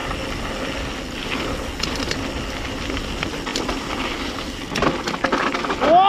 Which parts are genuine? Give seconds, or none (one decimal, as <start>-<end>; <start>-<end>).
0.0-3.5; 4.9-6.1